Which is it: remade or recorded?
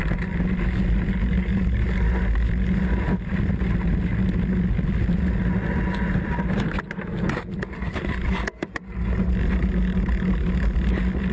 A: recorded